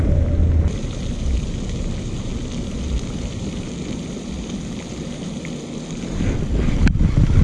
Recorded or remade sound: recorded